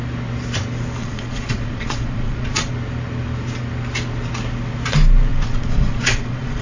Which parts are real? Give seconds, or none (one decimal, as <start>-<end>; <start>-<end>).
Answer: 0.0-1.0; 2.7-5.3